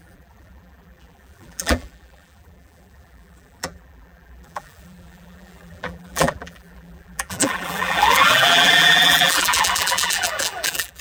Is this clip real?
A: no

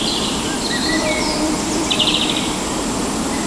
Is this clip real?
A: no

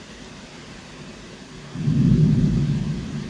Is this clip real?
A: yes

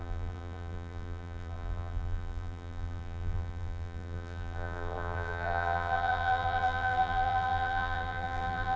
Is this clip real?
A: no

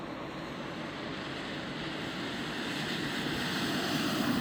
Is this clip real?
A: no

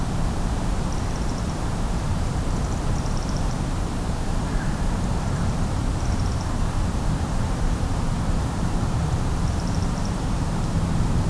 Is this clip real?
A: no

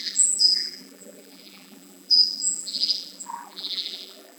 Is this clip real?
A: no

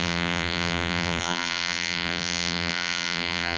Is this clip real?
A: no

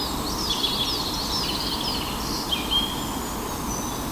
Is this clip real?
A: yes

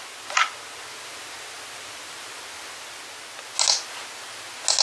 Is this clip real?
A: yes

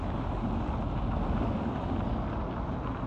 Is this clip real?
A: yes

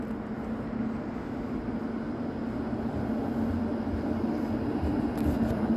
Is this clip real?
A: yes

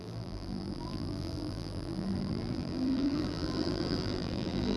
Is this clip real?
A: no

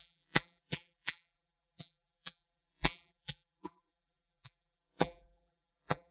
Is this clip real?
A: no